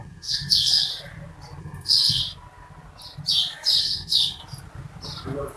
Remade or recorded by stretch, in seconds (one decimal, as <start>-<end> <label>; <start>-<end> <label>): 0.0-0.9 remade; 0.9-1.6 recorded; 1.6-2.2 remade; 2.2-3.8 recorded; 3.8-4.4 remade; 4.4-5.6 recorded